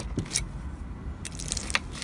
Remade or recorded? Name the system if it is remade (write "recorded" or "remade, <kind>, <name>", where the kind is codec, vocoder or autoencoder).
recorded